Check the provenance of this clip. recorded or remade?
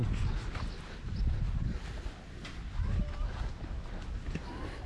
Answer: recorded